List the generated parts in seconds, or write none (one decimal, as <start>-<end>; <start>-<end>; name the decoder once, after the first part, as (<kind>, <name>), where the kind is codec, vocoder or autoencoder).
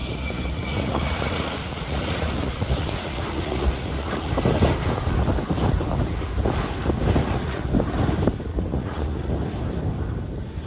0.0-4.3 (vocoder, Vocos); 7.2-7.7; 8.5-9.3